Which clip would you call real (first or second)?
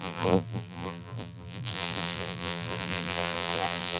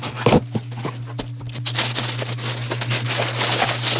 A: second